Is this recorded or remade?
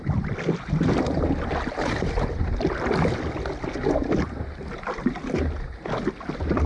recorded